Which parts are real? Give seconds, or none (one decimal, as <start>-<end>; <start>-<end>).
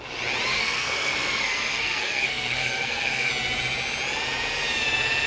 0.0-0.5; 3.3-5.3